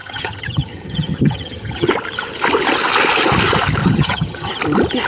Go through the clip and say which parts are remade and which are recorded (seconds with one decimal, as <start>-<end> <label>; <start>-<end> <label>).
0.0-1.9 remade; 1.9-3.8 recorded; 3.8-4.5 remade; 4.5-5.1 recorded